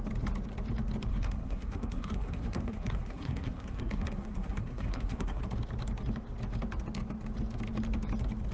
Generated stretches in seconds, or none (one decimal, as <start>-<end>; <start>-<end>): 1.1-5.4